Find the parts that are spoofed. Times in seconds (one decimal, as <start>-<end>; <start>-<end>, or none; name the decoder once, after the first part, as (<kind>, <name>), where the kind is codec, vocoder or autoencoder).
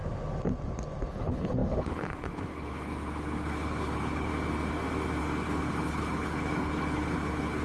1.1-4.3 (codec, HILCodec); 5.2-7.6